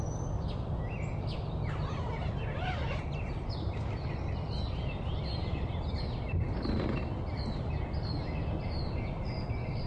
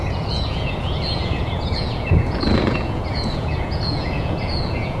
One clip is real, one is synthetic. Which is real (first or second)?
first